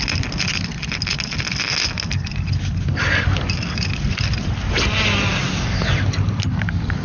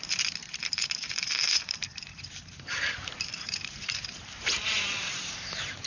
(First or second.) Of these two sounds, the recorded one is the first